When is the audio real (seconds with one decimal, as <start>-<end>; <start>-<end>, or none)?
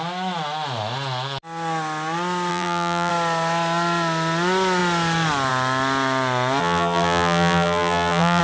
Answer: 0.0-2.5; 3.1-6.6